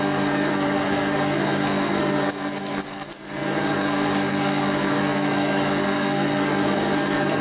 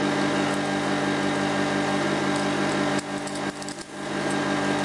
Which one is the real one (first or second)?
second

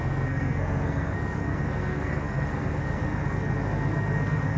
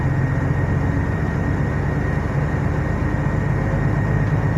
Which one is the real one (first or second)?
second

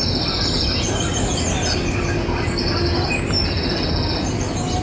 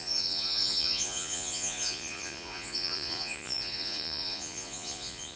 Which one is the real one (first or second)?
first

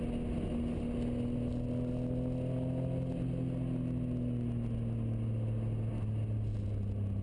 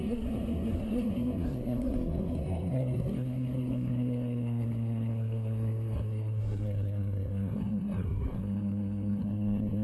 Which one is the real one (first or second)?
first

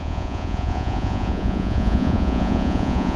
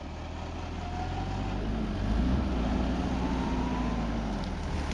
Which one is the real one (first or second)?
second